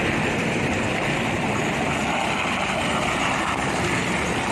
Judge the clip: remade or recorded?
recorded